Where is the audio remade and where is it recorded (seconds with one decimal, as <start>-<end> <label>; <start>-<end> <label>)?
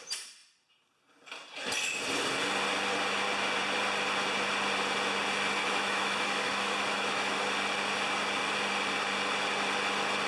0.0-5.6 recorded; 5.6-7.4 remade; 7.4-10.3 recorded